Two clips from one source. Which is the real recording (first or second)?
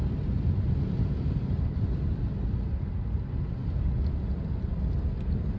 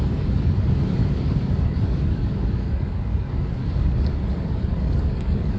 first